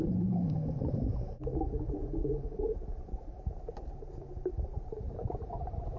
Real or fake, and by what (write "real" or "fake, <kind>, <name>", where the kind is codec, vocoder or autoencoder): fake, vocoder, BigVGAN v2